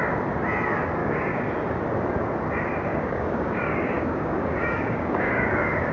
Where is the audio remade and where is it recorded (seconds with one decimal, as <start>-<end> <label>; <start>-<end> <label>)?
0.0-1.0 recorded; 1.0-1.5 remade; 1.5-2.9 recorded; 2.9-5.9 remade